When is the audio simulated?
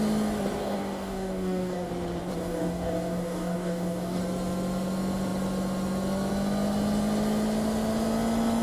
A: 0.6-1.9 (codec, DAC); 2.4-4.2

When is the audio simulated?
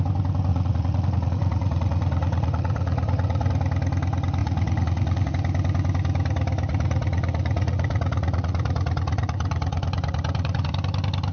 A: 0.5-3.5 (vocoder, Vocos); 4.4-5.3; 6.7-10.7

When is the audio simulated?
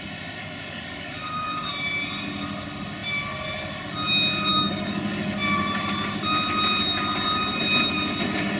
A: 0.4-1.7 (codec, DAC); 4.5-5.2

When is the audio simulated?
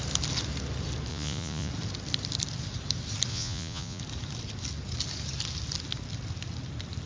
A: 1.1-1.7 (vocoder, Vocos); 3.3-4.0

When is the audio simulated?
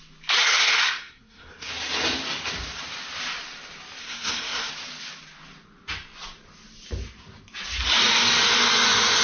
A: 0.4-1.7 (codec, SNAC); 4.0-4.7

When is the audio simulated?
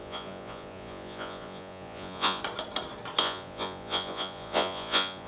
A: 0.0-2.4 (vocoder, Vocos); 3.2-5.3